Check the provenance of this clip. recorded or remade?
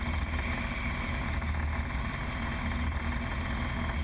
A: recorded